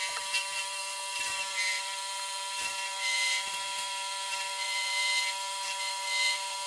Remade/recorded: remade